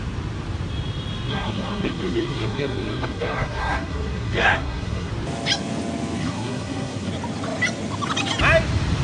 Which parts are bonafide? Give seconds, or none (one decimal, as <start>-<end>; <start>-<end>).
0.0-1.3; 5.1-6.2; 7.1-9.0